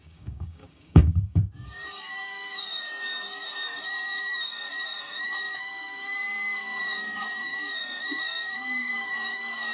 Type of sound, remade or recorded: remade